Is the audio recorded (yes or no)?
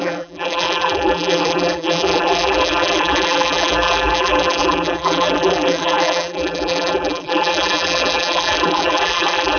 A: no